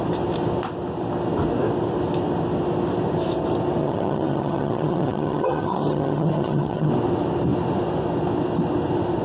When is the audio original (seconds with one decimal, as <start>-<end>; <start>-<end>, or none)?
0.0-3.8; 6.9-9.2